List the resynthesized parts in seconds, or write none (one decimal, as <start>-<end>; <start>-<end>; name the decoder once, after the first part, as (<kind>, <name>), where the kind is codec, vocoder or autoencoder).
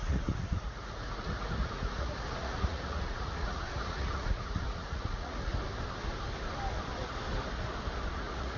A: 0.0-5.5 (vocoder, Vocos); 8.1-8.6